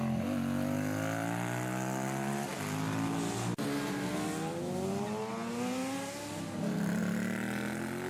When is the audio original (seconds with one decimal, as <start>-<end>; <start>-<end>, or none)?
0.0-8.1